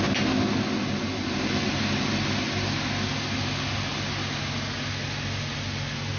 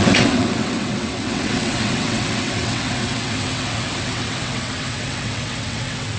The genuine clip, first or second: first